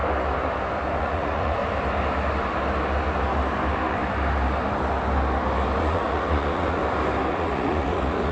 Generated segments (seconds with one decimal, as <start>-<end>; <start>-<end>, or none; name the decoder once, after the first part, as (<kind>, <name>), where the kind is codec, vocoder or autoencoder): 1.0-1.6 (vocoder, Vocos); 5.8-6.8; 7.3-8.3